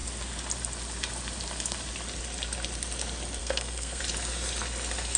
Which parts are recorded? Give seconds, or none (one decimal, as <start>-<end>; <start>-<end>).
0.0-3.4; 4.0-5.2

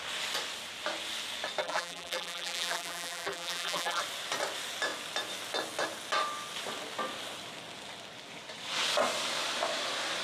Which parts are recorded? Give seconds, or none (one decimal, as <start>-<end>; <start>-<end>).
0.0-1.6; 4.0-10.2